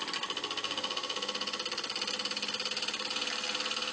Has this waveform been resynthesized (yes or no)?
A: no